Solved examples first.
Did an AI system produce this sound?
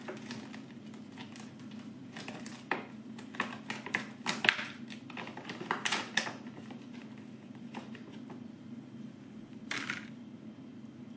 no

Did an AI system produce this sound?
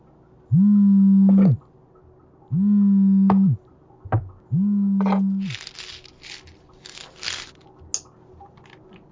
no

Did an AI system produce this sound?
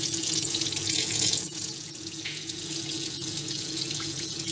yes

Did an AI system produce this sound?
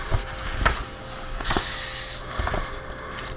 no